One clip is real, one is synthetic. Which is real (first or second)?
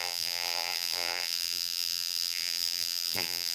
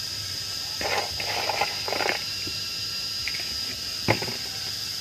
second